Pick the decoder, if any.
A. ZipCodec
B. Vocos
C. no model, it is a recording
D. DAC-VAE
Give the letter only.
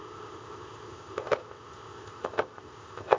A